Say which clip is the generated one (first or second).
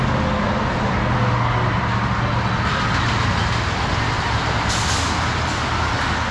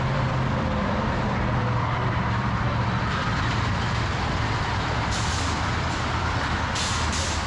second